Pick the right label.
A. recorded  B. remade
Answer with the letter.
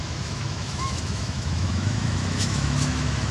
B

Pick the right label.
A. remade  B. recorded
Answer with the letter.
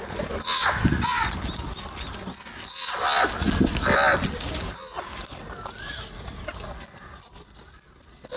B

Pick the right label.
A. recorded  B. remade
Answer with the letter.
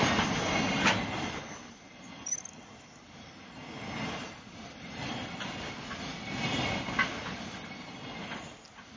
A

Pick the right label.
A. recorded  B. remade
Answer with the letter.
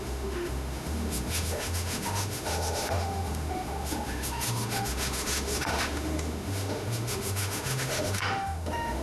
B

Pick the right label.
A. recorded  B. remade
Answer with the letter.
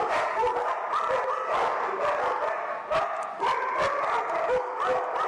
A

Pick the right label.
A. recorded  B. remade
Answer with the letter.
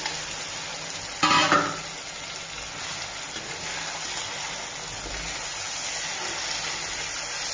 A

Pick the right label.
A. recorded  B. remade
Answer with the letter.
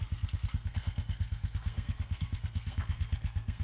B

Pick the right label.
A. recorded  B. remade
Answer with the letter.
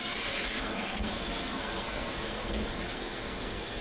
B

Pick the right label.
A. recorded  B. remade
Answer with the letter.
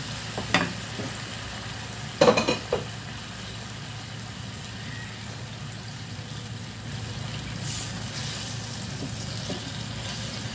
A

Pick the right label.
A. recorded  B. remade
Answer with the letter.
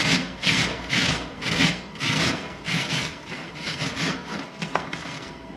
B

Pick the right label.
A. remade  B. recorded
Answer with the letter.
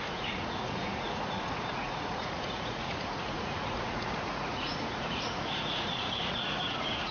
A